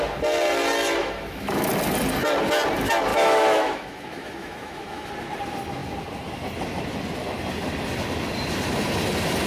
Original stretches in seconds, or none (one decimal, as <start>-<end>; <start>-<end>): 0.0-1.0; 1.7-3.1; 5.1-9.5